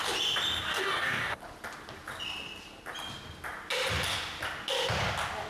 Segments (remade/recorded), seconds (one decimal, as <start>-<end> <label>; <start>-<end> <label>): 0.0-0.7 recorded; 0.7-1.4 remade; 1.4-5.5 recorded